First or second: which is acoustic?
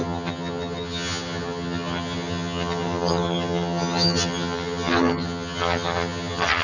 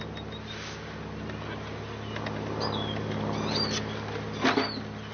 second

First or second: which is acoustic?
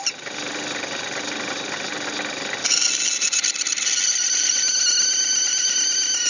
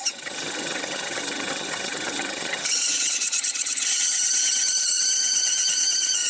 first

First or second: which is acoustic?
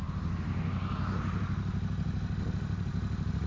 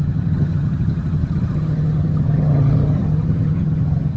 first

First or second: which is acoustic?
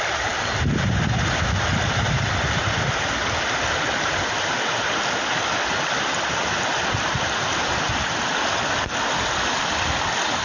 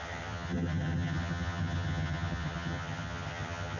first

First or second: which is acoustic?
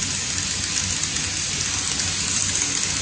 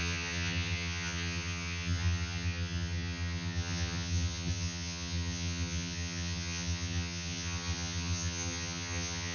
first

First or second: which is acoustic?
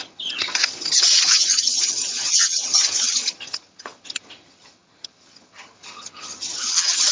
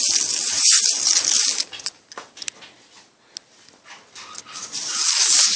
second